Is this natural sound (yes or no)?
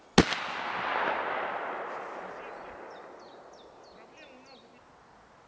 yes